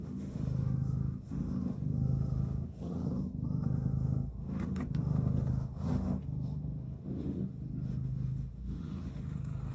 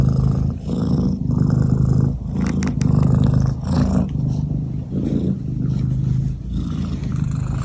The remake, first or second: first